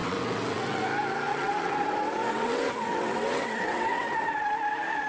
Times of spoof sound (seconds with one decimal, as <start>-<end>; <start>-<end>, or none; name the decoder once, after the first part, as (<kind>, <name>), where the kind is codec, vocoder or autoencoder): 0.0-0.8 (vocoder, WaveNeXt); 1.3-4.4